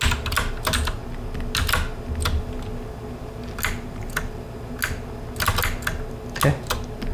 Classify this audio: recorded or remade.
recorded